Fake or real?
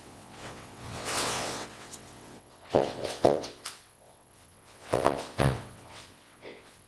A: fake